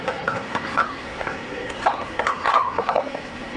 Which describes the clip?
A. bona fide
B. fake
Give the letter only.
B